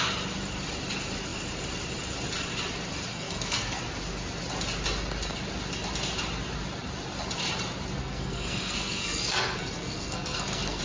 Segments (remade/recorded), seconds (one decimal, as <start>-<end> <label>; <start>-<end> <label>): 0.0-3.1 recorded; 3.1-3.8 remade; 3.8-8.0 recorded; 8.0-10.8 remade